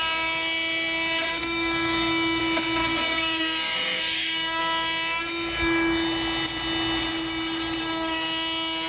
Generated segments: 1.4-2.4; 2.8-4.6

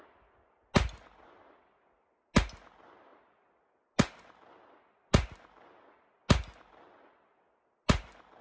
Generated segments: none

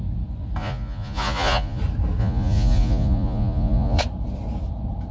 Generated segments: 0.6-1.8; 2.2-4.0

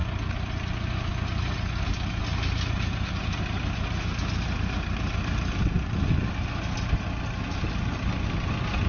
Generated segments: none

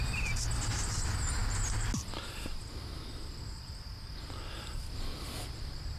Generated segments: none

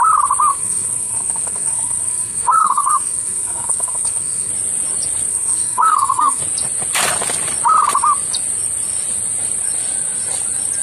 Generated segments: 0.5-4.5; 5.3-6.4

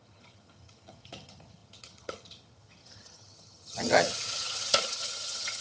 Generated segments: 0.0-5.6

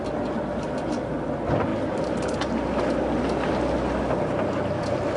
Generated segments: none